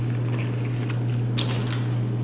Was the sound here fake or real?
real